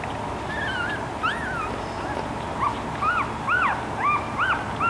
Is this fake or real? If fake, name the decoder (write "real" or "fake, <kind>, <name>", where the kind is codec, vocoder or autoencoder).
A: real